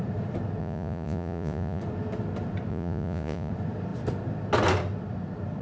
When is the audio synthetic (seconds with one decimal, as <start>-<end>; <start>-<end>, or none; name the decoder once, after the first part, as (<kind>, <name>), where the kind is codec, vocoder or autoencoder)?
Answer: 0.6-1.8 (vocoder, Vocos); 2.7-3.5